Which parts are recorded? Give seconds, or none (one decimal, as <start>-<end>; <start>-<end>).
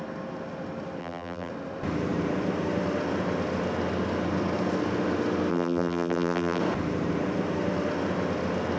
0.0-1.0; 1.5-5.5; 6.6-8.8